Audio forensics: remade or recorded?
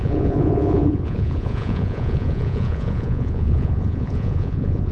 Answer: remade